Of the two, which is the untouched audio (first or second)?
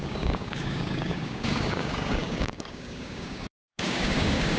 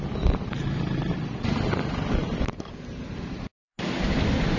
second